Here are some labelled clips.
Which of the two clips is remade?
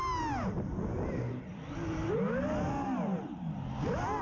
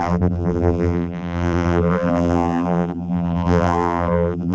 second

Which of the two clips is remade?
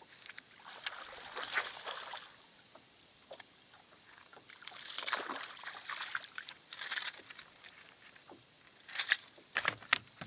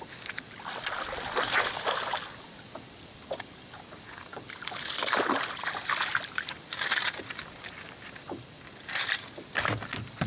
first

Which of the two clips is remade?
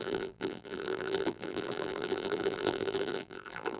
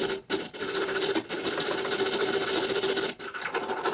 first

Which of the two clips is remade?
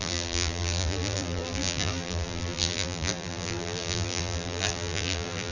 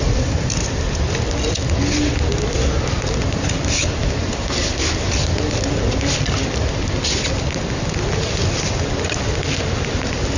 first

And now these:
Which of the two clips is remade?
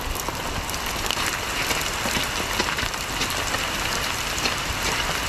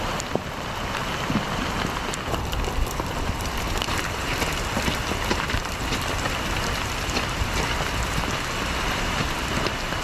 second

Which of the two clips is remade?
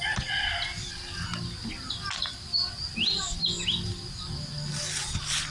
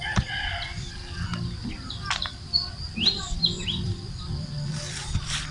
second